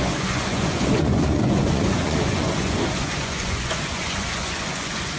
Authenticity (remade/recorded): remade